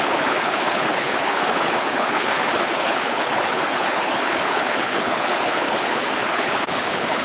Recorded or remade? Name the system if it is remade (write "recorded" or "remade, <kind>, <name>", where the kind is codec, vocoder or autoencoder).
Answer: remade, codec, HILCodec